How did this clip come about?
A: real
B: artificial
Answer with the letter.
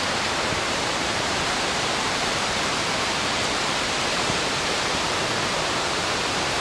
B